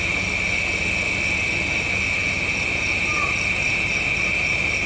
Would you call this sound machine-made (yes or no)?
no